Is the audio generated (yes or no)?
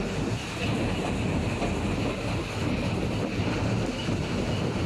no